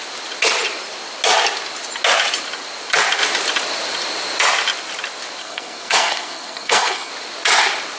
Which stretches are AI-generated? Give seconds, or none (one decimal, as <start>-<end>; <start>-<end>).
5.4-7.1